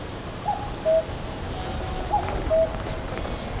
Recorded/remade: recorded